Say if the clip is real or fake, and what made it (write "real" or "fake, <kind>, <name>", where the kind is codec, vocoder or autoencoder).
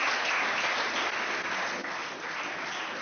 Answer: real